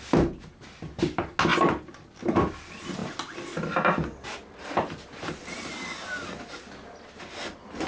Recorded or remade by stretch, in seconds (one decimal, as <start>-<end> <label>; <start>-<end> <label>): 0.0-7.9 recorded

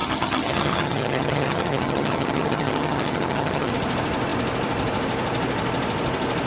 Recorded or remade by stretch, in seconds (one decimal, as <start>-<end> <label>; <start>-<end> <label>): 0.0-3.7 remade; 3.7-6.5 recorded

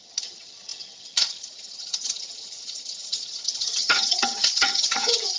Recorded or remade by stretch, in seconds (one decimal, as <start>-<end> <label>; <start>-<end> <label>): 0.0-5.4 remade

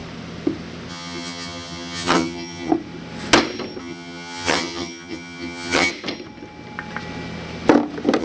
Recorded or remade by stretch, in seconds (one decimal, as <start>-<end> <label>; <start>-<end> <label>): 0.0-0.9 recorded; 0.9-2.7 remade; 2.7-3.8 recorded; 3.8-5.9 remade; 5.9-8.2 recorded

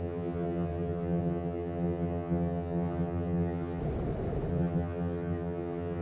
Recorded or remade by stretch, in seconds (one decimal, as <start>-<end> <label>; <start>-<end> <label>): 0.0-3.8 remade; 3.8-4.5 recorded; 4.5-6.0 remade

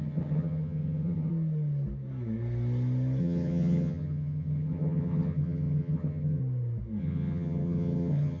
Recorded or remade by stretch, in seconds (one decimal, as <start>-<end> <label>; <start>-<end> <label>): 0.0-1.3 remade; 1.3-3.2 recorded; 3.2-6.4 remade; 6.4-7.0 recorded; 7.0-8.4 remade

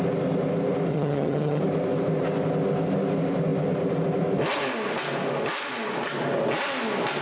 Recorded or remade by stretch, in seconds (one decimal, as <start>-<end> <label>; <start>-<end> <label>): 0.0-0.9 recorded; 0.9-1.6 remade; 1.6-7.2 recorded